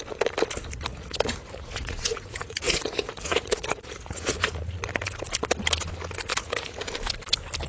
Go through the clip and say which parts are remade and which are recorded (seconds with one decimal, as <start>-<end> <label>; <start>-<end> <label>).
0.0-0.9 recorded; 0.9-4.8 remade; 4.8-6.3 recorded; 6.3-6.8 remade; 6.8-7.7 recorded